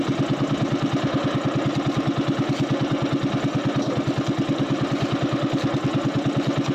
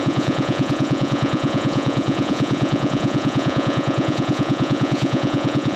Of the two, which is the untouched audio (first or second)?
first